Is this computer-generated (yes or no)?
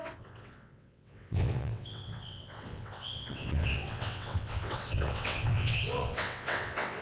yes